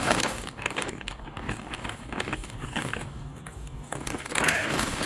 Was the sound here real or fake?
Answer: fake